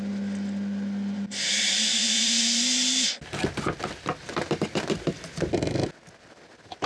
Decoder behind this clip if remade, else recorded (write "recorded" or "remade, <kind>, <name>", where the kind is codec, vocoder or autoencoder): recorded